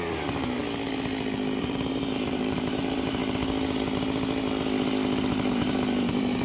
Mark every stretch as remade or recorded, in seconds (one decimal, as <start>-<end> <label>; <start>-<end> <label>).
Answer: 0.0-0.6 remade; 0.6-1.6 recorded; 1.6-3.2 remade; 3.2-5.5 recorded; 5.5-6.4 remade